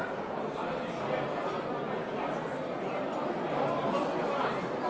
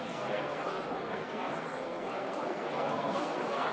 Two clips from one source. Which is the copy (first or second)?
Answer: second